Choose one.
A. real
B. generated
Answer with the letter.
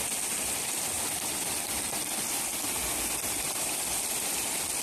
A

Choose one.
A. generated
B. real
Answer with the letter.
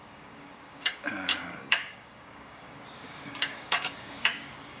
A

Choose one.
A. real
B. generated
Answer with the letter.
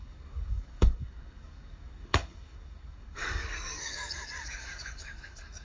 B